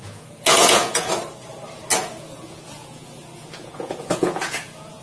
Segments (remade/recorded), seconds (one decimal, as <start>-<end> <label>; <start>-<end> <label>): 0.0-1.1 remade; 1.1-1.9 recorded; 1.9-5.0 remade